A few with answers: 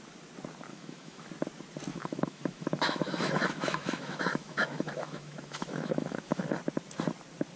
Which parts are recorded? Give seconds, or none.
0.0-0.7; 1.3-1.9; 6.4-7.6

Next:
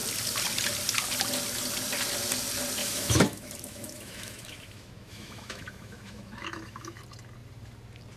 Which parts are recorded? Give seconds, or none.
0.0-2.8; 7.0-8.2

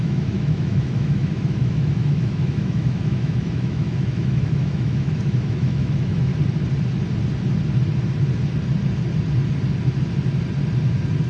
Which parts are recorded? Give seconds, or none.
6.3-11.3

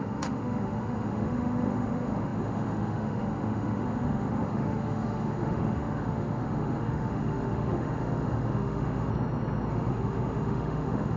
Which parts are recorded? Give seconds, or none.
9.1-9.7

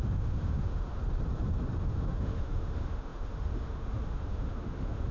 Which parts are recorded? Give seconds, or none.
1.0-1.8

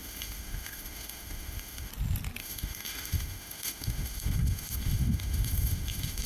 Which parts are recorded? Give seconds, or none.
1.9-2.4

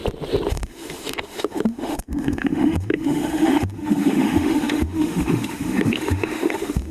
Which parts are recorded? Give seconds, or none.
0.0-0.5